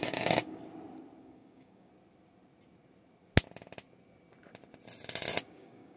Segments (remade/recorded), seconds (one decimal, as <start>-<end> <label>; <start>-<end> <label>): 0.0-0.6 remade; 0.6-1.2 recorded; 1.2-1.9 remade; 1.9-5.5 recorded; 5.5-6.0 remade

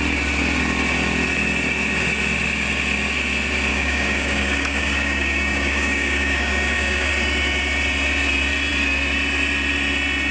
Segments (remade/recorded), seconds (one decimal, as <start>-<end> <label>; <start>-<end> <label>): 0.0-3.7 recorded; 3.7-7.1 remade; 7.1-10.3 recorded

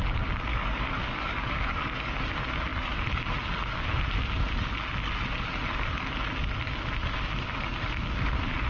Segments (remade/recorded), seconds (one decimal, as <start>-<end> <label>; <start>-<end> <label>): 0.0-0.5 recorded; 0.5-2.2 remade; 2.2-8.7 recorded

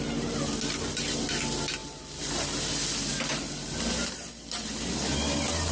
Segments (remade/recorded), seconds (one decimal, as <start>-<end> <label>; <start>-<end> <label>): 0.0-5.7 recorded

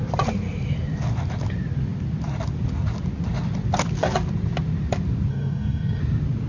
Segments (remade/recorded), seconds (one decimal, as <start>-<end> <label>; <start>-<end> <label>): 0.0-5.3 recorded; 5.3-6.0 remade; 6.0-6.5 recorded

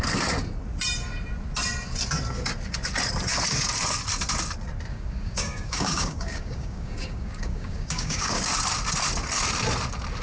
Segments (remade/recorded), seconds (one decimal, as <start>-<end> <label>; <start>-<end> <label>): 0.0-4.9 recorded; 4.9-8.5 remade; 8.5-10.2 recorded